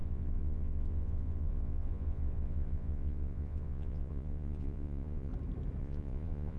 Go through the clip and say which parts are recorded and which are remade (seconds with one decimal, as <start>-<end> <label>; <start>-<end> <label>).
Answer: 0.0-5.3 remade; 5.3-5.8 recorded; 5.8-6.6 remade